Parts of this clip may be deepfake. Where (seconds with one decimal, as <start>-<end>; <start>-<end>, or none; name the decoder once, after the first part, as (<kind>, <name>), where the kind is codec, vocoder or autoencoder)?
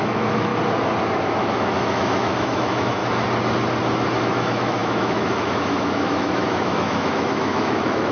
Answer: 0.0-0.5 (autoencoder, DAC-VAE); 1.0-3.0; 4.2-8.1